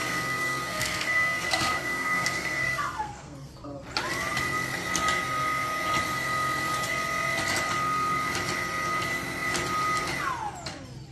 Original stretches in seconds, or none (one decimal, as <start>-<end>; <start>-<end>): 3.5-11.1